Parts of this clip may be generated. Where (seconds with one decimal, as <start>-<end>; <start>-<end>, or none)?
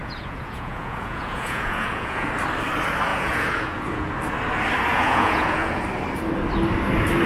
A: 0.0-2.3; 3.1-4.1; 4.9-5.8